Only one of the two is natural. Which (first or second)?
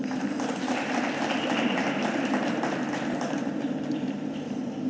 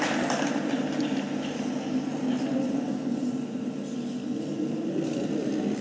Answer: second